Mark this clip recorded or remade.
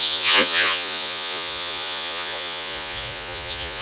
remade